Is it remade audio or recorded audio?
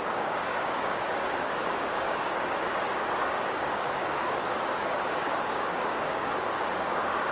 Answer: remade